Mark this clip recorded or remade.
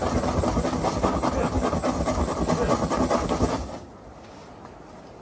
recorded